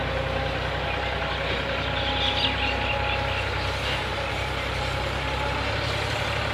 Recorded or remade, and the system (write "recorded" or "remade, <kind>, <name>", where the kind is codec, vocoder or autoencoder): recorded